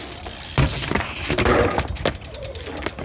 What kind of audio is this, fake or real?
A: real